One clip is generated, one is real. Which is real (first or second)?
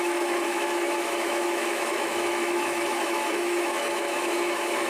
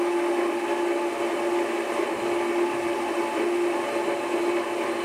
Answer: second